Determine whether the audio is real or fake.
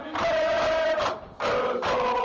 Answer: real